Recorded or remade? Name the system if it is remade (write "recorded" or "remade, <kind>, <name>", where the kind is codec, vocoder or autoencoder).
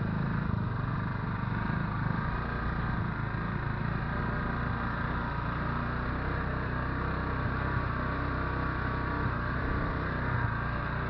recorded